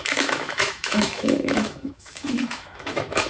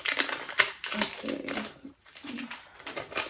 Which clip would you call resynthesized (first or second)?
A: first